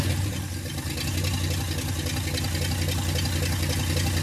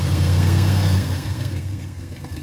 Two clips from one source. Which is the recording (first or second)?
first